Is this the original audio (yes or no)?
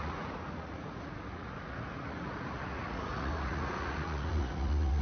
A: no